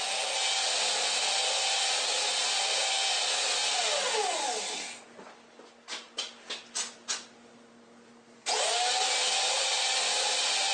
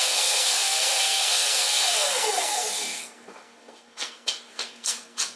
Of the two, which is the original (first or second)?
first